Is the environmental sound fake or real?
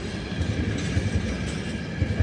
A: real